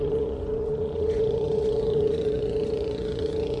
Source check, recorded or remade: remade